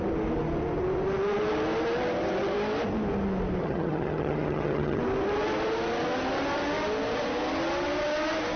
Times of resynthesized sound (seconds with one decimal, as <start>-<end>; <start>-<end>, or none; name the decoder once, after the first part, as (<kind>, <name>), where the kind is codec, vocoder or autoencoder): 3.6-5.0 (vocoder, HiFi-GAN)